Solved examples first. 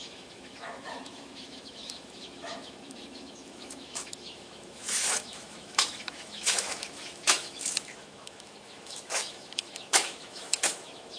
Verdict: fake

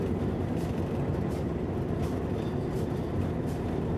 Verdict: real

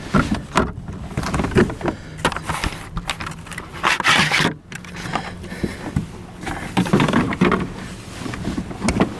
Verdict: real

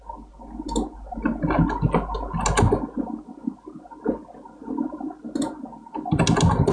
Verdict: real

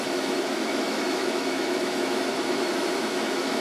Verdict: fake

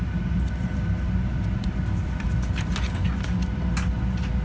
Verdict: real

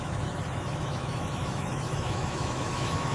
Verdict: fake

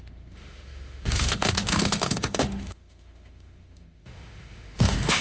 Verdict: fake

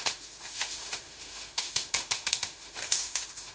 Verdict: fake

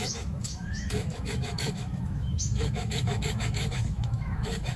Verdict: fake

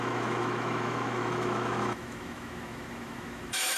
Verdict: fake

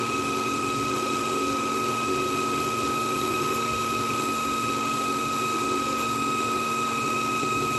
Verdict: fake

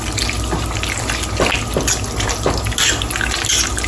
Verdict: real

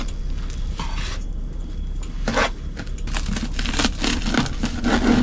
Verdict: real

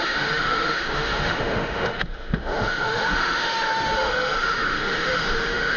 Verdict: fake